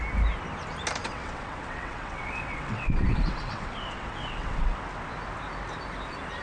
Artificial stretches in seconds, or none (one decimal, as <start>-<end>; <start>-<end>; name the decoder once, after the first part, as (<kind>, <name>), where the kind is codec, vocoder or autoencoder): 1.0-4.8 (vocoder, WaveNeXt)